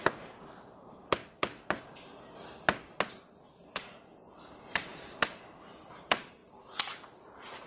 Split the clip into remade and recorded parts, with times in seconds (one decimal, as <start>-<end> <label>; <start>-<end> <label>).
0.0-1.4 remade; 1.4-3.1 recorded; 3.1-7.7 remade